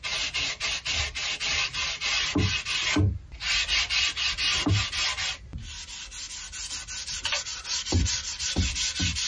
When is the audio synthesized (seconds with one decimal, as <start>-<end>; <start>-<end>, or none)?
none